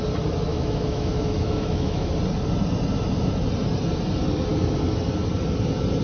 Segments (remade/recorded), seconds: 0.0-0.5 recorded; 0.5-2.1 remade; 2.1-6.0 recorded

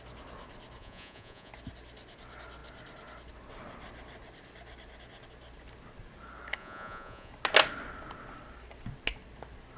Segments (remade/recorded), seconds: 0.0-0.8 recorded; 0.8-1.5 remade; 1.5-6.6 recorded; 6.6-7.3 remade; 7.3-9.8 recorded

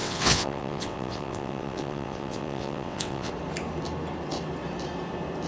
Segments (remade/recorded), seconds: 0.0-3.3 remade; 3.3-5.5 recorded

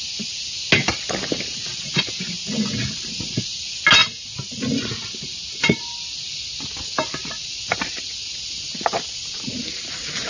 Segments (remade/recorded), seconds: 0.0-10.3 recorded

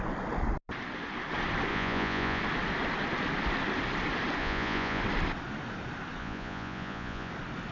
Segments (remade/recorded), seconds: 0.0-1.7 recorded; 1.7-2.4 remade; 2.4-4.4 recorded; 4.4-5.0 remade; 5.0-6.2 recorded; 6.2-7.3 remade; 7.3-7.7 recorded